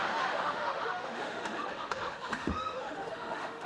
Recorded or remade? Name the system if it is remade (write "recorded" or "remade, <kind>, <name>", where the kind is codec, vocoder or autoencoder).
remade, autoencoder, DAC-VAE